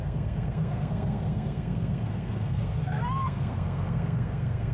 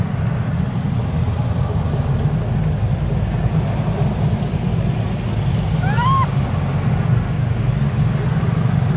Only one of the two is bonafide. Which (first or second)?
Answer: second